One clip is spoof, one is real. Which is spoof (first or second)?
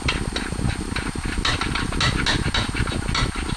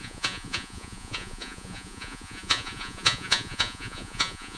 second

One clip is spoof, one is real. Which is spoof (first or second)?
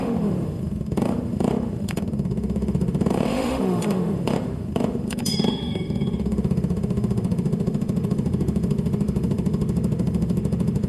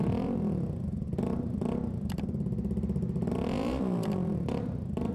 first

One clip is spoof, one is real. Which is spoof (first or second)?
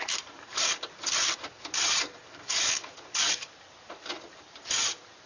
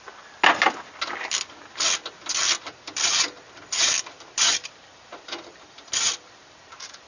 first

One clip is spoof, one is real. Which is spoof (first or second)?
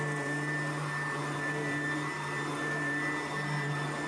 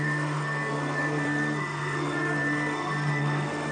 second